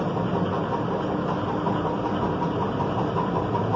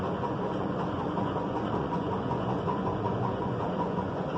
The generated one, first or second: second